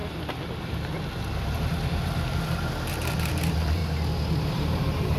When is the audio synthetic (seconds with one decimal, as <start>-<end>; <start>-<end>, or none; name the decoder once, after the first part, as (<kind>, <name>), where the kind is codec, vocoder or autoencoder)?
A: 2.9-3.8 (vocoder, BigVGAN v2); 4.4-5.2